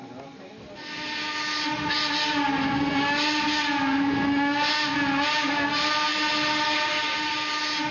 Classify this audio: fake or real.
real